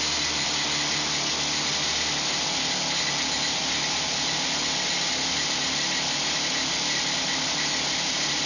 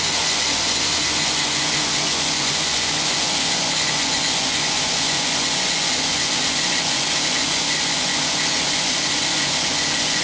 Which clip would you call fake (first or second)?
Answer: second